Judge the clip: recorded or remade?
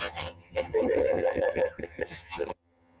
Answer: remade